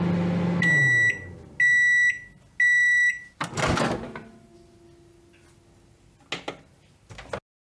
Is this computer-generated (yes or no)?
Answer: no